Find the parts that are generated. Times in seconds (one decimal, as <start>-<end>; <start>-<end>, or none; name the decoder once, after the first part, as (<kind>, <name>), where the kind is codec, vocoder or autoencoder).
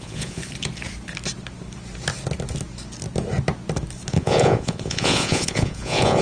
0.0-0.4 (vocoder, Vocos); 4.1-6.2